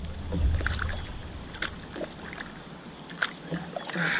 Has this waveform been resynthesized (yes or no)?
no